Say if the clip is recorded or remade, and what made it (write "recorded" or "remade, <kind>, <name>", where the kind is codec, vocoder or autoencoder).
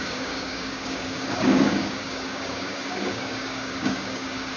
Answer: remade, codec, DAC